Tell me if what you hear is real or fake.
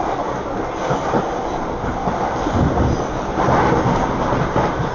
real